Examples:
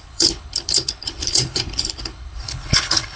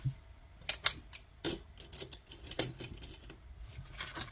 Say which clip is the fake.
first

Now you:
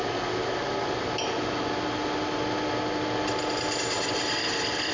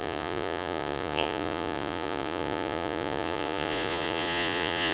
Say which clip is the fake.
second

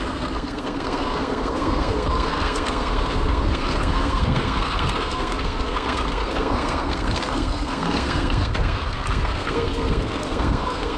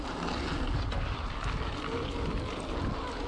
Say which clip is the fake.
first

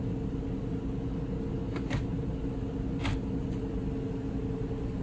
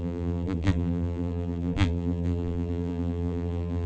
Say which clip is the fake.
second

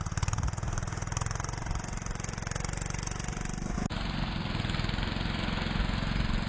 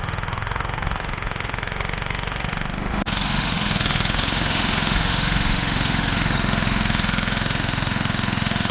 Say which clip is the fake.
second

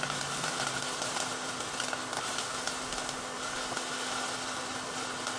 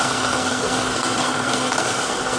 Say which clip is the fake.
second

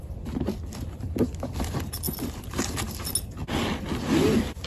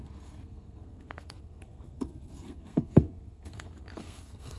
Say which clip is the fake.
second